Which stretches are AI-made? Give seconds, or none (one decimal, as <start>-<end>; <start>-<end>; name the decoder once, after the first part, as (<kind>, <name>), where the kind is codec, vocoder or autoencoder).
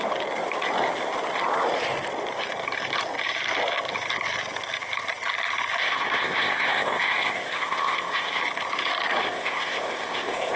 5.8-8.4 (codec, ZipCodec); 9.2-10.6